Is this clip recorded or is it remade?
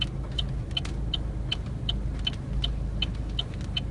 recorded